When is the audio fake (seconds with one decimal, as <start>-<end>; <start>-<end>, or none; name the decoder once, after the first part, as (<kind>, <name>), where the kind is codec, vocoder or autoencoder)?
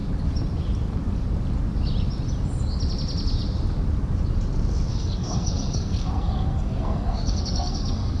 4.9-8.2 (codec, SNAC)